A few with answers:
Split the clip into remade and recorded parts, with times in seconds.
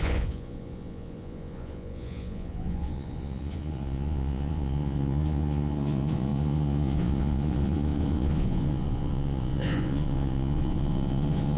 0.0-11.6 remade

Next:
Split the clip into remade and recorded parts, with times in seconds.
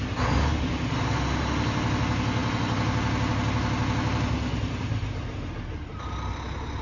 0.0-6.8 recorded